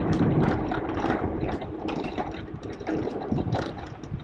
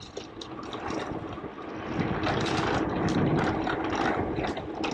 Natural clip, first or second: second